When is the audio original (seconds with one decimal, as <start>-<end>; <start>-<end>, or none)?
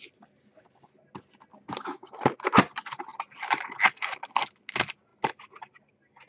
0.0-1.5; 2.1-6.3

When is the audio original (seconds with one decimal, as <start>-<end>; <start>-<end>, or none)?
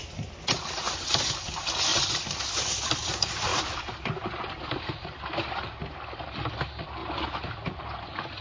0.0-8.4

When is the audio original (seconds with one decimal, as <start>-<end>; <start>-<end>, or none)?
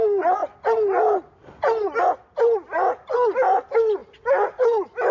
0.0-5.1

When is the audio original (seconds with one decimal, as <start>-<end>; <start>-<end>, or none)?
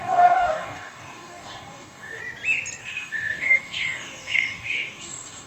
2.2-2.8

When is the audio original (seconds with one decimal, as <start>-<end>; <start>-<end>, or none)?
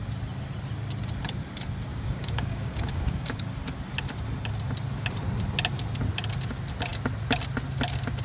0.0-1.9; 3.4-8.2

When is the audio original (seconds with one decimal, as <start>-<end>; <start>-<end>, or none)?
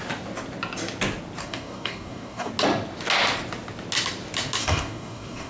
0.0-1.4; 2.5-4.6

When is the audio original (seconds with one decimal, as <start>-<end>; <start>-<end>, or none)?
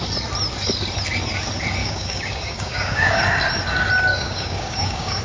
0.0-1.8; 3.2-4.1